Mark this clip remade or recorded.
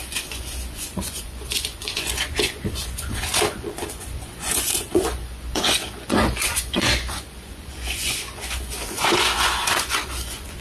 remade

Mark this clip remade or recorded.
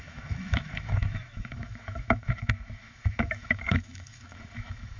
remade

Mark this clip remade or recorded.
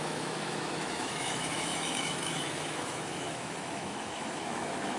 remade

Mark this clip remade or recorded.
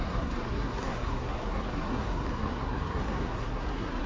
remade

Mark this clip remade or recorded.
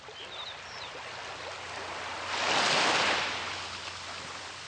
recorded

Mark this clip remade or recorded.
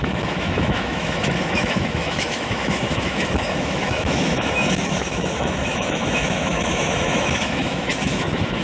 remade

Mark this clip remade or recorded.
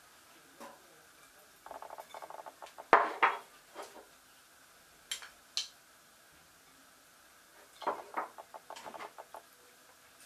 recorded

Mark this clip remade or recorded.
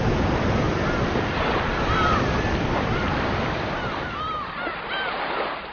remade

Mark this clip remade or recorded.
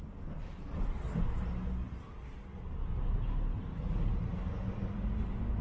recorded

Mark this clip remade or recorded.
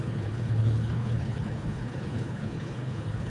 remade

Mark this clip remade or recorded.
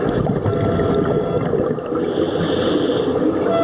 recorded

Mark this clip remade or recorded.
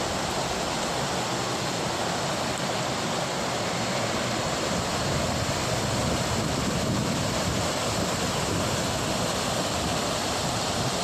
recorded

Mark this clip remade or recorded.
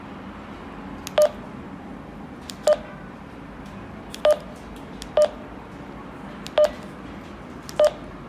recorded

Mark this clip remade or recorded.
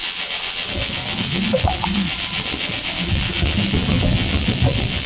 remade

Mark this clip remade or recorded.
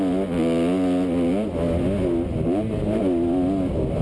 recorded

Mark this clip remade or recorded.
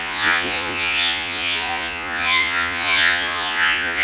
remade